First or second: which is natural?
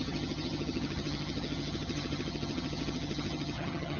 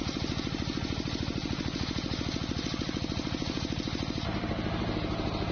second